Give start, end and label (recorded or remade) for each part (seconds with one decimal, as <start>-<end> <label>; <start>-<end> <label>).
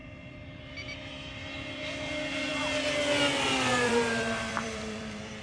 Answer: 0.0-2.5 remade; 2.5-3.7 recorded; 3.7-5.4 remade